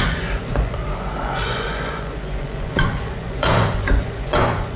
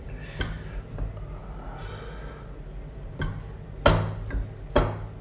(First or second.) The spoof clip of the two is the first